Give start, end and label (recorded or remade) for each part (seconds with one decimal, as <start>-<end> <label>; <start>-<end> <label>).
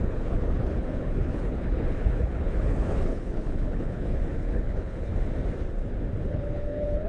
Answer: 0.0-5.1 remade; 5.1-6.3 recorded; 6.3-7.1 remade